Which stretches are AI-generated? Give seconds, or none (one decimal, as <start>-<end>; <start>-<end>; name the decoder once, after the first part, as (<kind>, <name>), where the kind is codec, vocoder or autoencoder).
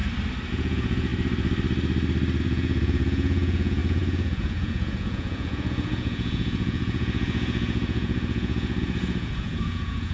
0.5-1.1 (vocoder, Vocos); 2.4-10.1